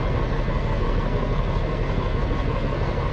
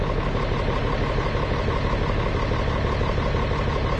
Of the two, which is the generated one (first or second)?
first